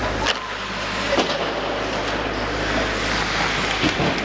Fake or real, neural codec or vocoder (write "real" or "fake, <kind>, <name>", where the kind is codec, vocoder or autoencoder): real